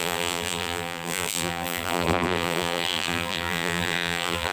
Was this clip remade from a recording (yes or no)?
yes